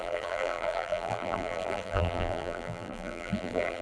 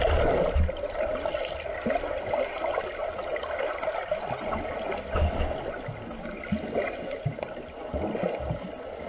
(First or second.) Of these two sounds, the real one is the second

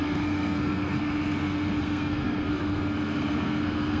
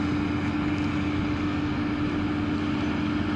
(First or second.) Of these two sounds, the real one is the second